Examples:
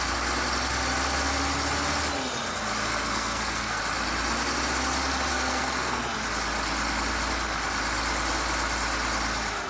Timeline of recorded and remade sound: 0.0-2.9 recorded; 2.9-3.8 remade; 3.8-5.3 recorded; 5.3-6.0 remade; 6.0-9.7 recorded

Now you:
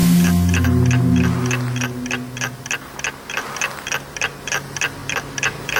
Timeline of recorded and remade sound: 0.0-5.0 recorded; 5.0-5.8 remade